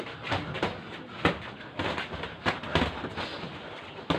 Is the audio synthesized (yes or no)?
no